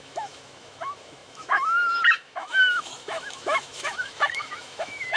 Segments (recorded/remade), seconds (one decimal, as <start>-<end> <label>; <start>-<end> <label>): 0.0-5.2 remade